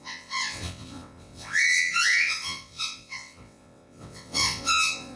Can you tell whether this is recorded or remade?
remade